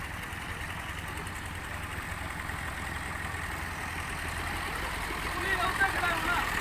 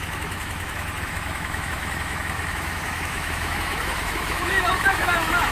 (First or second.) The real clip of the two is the first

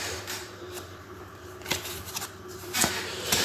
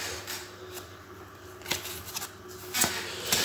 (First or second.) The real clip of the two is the second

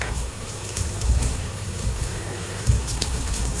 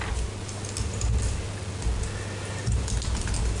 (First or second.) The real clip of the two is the second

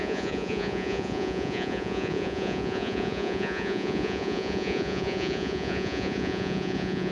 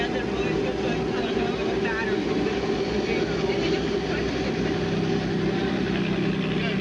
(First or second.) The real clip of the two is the second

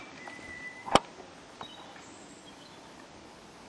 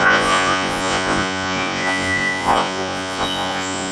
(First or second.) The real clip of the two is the first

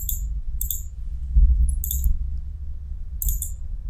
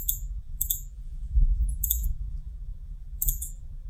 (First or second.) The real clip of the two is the first